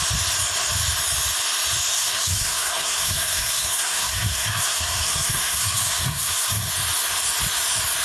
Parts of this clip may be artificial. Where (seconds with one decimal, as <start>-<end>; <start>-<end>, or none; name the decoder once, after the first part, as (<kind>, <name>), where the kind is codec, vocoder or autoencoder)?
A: 1.9-6.7 (codec, SNAC)